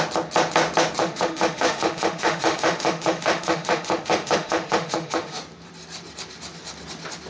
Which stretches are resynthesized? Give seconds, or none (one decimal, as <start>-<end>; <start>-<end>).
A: 1.0-5.4